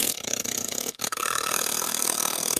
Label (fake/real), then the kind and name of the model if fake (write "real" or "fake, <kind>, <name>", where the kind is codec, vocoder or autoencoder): fake, codec, SNAC